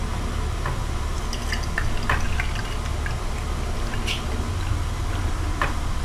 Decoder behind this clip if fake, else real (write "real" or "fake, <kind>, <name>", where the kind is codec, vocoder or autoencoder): real